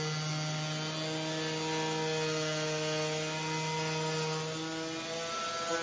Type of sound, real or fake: real